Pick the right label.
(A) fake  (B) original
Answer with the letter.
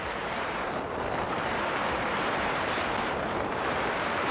A